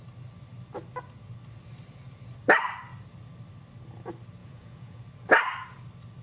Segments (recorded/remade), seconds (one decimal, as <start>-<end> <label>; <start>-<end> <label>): 0.0-4.4 recorded; 4.4-5.0 remade; 5.0-6.2 recorded